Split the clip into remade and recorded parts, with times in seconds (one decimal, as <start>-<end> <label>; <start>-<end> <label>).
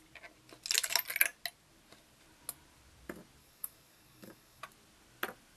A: 0.0-3.4 recorded; 3.4-4.6 remade; 4.6-5.6 recorded